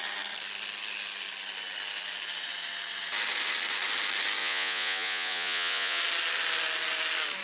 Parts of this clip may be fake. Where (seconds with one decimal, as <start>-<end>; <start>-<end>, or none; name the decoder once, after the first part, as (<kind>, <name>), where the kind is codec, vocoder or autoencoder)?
4.4-6.0 (vocoder, Vocos)